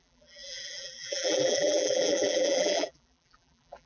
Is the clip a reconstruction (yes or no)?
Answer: yes